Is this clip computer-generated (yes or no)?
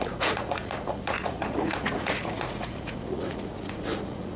yes